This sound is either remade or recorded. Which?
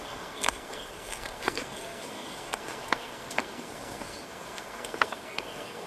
remade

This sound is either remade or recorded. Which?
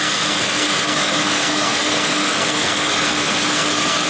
remade